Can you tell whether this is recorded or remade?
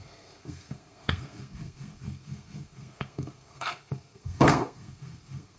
remade